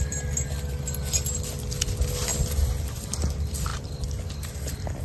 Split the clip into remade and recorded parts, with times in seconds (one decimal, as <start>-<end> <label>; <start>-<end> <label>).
0.0-5.0 recorded